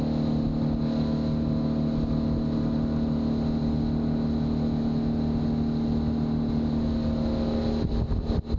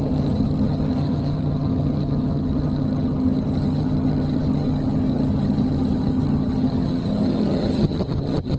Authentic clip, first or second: first